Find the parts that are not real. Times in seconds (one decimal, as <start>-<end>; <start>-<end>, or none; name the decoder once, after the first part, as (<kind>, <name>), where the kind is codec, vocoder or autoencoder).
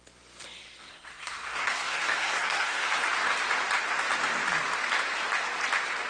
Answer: 0.6-3.0 (codec, SNAC)